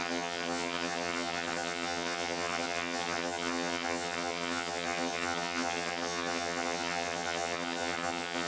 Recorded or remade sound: remade